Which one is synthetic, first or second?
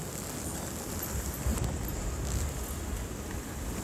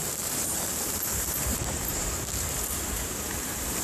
second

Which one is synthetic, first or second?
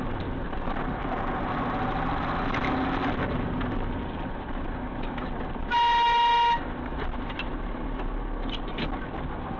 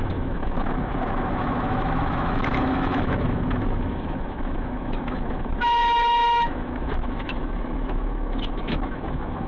second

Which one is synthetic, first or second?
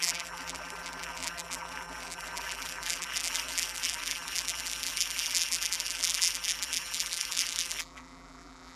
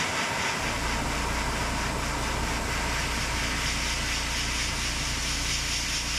first